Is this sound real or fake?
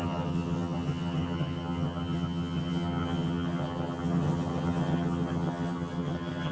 fake